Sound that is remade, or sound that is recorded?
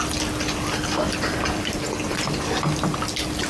recorded